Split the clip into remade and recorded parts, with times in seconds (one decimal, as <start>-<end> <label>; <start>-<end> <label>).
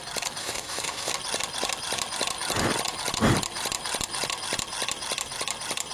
0.0-0.4 recorded; 0.4-1.1 remade; 1.1-5.9 recorded